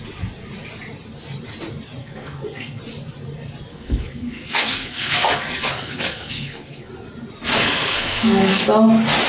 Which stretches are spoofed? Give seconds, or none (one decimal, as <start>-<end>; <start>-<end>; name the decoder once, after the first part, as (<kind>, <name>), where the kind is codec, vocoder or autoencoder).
2.0-2.8 (codec, SNAC); 3.7-6.9; 7.6-8.6